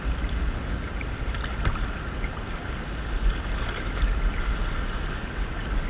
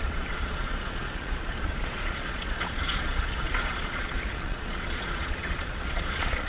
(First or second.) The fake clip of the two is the second